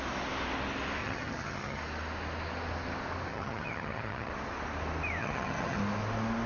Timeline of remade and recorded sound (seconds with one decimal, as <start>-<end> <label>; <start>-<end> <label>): 0.0-1.0 recorded; 1.0-1.8 remade; 1.8-3.3 recorded; 3.3-4.3 remade; 4.3-5.2 recorded; 5.2-5.8 remade; 5.8-6.5 recorded